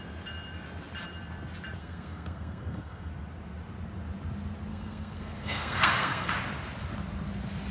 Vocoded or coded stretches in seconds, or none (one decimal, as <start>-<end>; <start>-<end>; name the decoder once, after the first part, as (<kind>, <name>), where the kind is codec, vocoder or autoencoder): 1.8-3.1 (codec, SNAC); 4.7-6.3